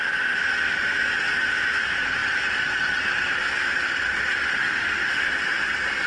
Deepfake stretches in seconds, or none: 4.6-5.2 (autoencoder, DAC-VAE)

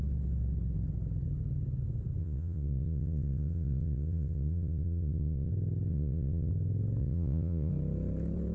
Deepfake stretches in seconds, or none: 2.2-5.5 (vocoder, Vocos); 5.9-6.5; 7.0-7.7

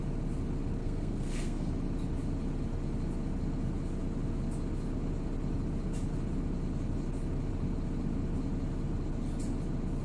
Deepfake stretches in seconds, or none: 0.8-1.7 (codec, SNAC)

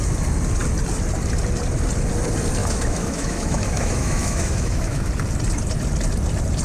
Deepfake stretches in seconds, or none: 2.6-5.1 (autoencoder, DAC-VAE)